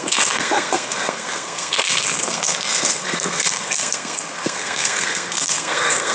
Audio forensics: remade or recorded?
remade